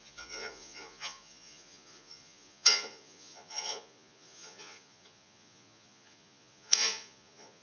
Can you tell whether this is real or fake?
fake